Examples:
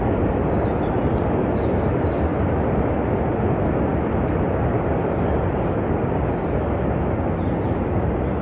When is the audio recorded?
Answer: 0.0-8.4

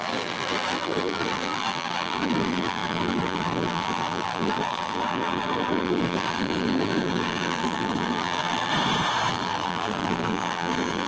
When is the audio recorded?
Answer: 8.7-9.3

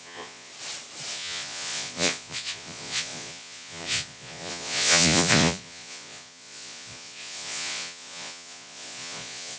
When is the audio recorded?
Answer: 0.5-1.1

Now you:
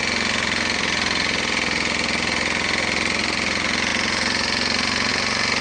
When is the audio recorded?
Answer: 0.0-5.6

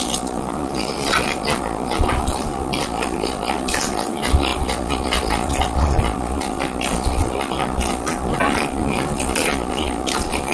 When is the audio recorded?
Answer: none

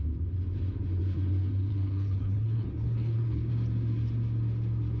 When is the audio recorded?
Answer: 0.0-1.7; 3.5-5.0